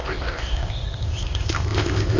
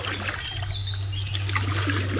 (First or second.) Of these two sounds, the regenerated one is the first